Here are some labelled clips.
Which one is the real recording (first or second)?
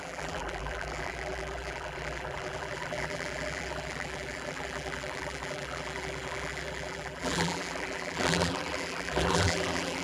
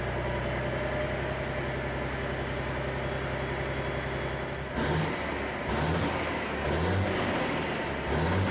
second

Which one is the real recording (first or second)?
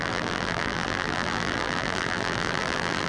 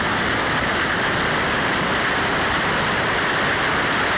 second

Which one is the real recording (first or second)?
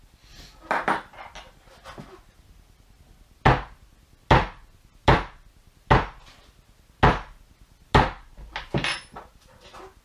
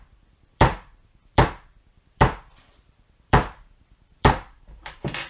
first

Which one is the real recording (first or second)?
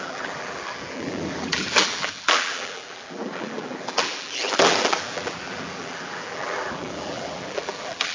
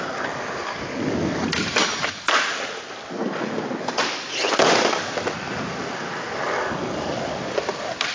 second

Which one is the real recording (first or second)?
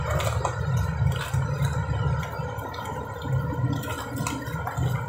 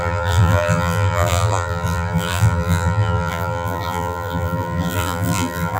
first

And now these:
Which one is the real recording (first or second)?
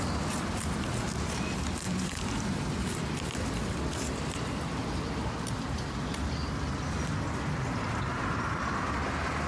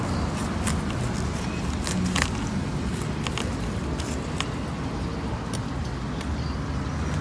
second